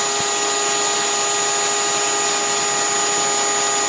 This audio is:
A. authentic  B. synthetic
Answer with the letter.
A